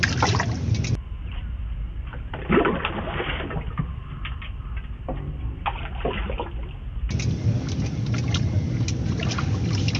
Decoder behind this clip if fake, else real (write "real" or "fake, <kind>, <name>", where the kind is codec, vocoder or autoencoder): real